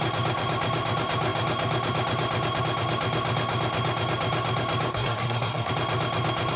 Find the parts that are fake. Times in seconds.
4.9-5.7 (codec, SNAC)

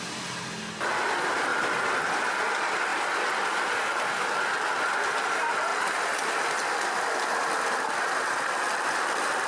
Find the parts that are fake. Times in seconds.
1.5-2.0 (vocoder, BigVGAN v2)

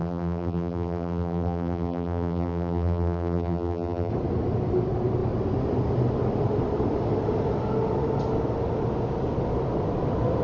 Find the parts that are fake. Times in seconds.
0.0-4.1 (vocoder, BigVGAN v2)

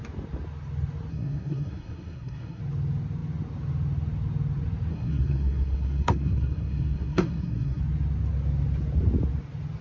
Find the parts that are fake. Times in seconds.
1.1-2.6 (codec, SNAC); 4.9-7.8